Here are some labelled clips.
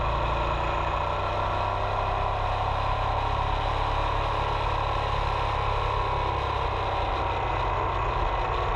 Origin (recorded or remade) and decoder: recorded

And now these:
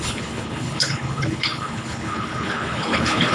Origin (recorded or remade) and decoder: remade, codec, HILCodec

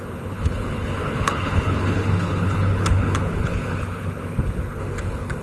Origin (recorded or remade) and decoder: remade, codec, HILCodec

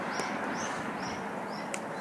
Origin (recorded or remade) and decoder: recorded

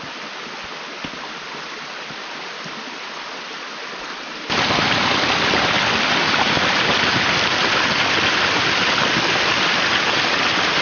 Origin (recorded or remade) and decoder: recorded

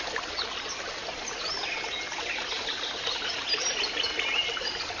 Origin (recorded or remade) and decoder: recorded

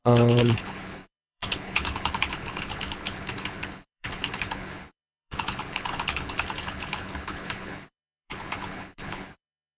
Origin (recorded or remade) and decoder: remade, codec, HILCodec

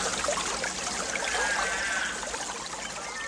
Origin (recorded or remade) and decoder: recorded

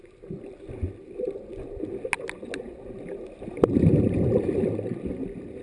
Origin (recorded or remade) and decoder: recorded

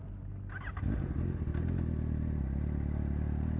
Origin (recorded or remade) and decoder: recorded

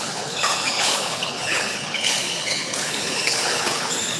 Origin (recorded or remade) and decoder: remade, codec, HILCodec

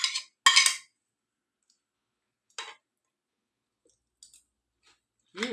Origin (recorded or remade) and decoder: recorded